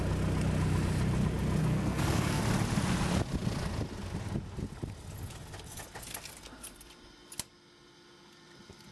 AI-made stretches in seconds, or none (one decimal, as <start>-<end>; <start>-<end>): 1.6-2.4

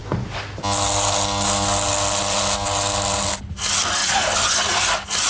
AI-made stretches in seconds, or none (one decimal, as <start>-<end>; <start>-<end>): 4.0-4.6